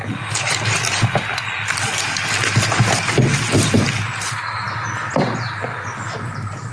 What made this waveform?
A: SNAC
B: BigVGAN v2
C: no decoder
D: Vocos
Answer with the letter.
C